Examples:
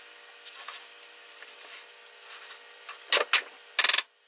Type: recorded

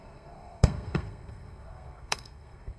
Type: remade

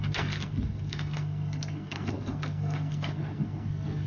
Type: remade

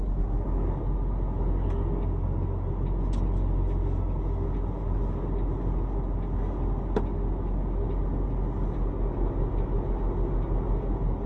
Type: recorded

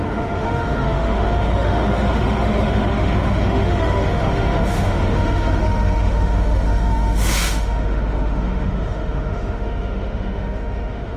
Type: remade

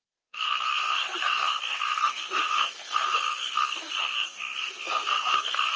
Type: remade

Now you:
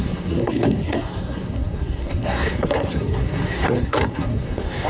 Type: remade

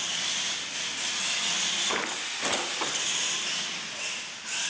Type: recorded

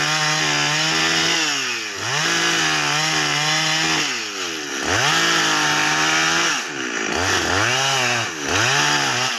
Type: recorded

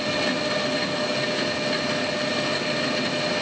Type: recorded